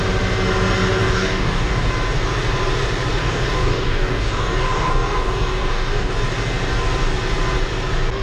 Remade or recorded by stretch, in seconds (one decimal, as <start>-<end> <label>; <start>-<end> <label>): 0.0-1.0 recorded; 1.0-1.9 remade; 1.9-3.2 recorded; 3.2-6.1 remade; 6.1-8.2 recorded